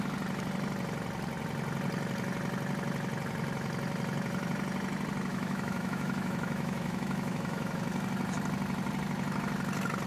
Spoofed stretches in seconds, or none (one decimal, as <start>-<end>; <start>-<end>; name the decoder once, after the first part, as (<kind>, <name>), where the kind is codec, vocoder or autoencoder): 5.3-7.8 (autoencoder, DAC-VAE)